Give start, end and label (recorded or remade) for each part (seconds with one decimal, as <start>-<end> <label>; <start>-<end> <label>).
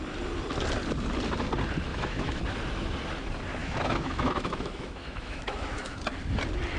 0.0-1.9 recorded; 1.9-2.4 remade; 2.4-3.6 recorded; 3.6-6.0 remade; 6.0-6.8 recorded